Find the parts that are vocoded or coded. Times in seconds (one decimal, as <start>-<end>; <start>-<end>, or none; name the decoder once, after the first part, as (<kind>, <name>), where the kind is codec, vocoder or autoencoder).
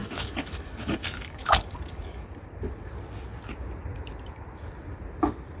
0.0-2.3 (codec, DAC)